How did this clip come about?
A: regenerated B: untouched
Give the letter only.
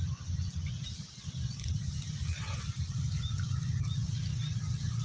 B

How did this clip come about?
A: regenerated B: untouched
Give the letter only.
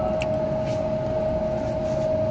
B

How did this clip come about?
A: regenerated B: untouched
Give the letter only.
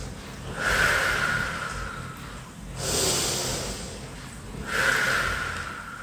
B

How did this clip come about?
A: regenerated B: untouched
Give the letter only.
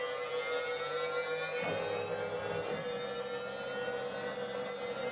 B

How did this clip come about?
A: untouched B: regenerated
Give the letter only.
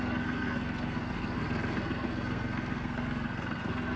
B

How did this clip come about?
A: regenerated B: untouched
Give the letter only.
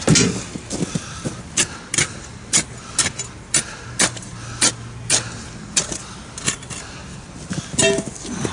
B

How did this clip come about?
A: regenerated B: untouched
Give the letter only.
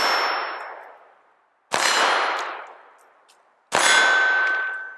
B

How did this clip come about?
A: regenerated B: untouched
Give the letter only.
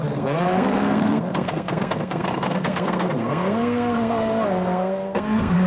A